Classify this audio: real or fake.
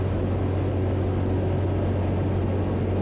real